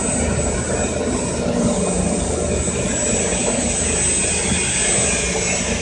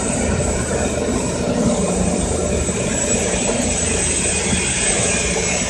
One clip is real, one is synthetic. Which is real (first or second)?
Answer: first